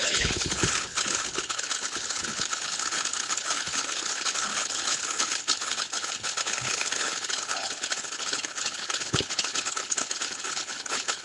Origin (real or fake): fake